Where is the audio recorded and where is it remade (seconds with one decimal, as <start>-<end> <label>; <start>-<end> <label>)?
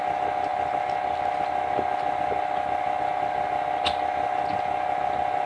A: 0.0-5.5 recorded